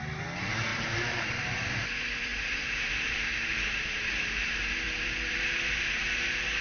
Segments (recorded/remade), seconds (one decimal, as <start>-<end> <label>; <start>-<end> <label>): 0.0-0.7 recorded; 0.7-1.7 remade; 1.7-2.3 recorded; 2.3-6.1 remade; 6.1-6.6 recorded